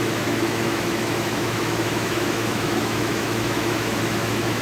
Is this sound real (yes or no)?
no